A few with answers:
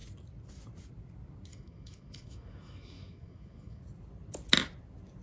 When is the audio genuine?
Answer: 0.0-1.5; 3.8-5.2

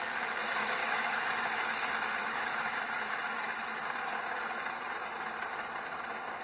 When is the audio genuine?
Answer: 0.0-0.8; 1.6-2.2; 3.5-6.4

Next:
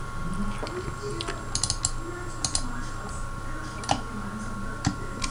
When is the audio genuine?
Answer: 0.0-5.3

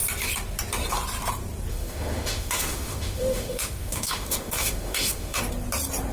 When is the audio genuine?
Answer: 0.0-1.7; 5.4-6.1